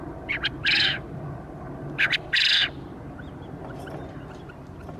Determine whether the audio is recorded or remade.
remade